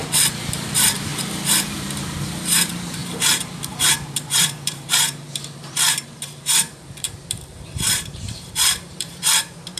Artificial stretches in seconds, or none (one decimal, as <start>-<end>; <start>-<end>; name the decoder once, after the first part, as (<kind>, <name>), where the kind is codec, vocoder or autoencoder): 0.0-1.1 (vocoder, BigVGAN v2); 1.6-9.8